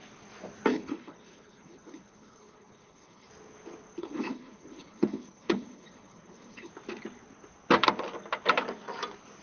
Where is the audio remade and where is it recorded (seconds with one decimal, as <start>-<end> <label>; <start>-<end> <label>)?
0.0-0.7 recorded; 0.7-3.3 remade; 3.3-4.0 recorded; 4.0-6.7 remade; 6.7-9.4 recorded